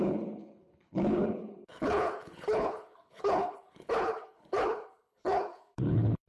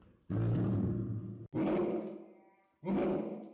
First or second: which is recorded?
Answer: second